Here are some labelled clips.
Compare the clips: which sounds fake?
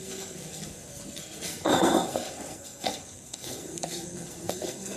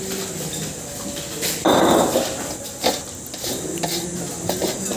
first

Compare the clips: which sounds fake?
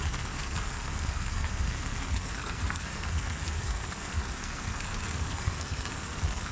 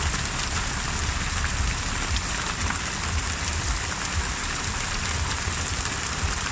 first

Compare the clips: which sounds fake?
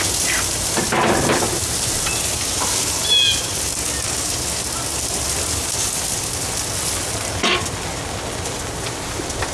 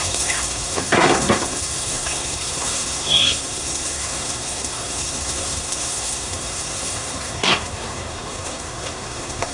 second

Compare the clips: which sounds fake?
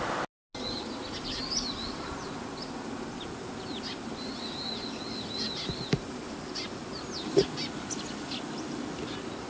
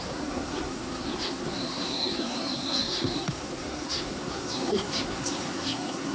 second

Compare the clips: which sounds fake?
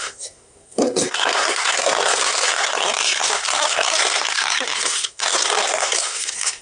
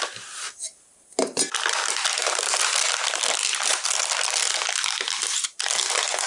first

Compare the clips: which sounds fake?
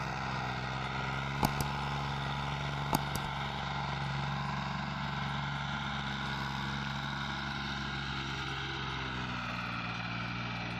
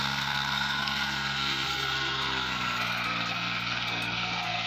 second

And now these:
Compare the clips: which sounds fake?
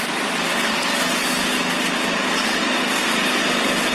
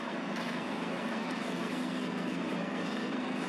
second